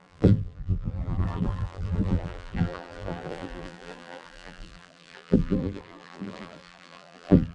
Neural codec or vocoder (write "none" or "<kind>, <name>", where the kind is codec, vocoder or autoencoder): vocoder, BigVGAN v2